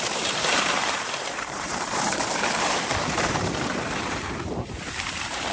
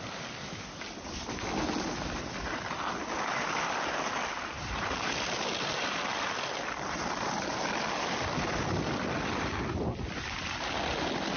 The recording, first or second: second